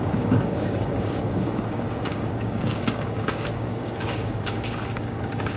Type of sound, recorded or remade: remade